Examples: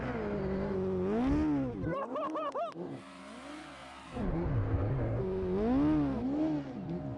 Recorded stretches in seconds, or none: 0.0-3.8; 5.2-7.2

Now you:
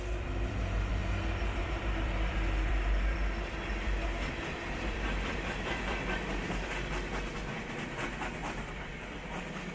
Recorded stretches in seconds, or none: 1.0-1.6

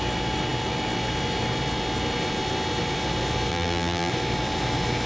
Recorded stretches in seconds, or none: 0.0-3.5; 4.1-5.1

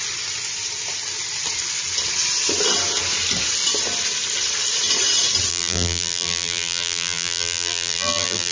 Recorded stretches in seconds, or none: 0.0-5.5

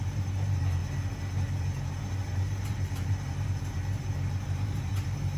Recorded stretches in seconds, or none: 0.8-2.1

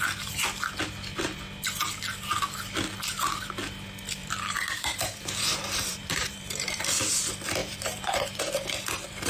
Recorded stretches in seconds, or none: 0.0-4.2; 6.8-7.6; 8.4-9.3

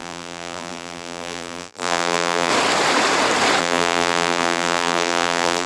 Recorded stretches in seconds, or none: 2.5-3.6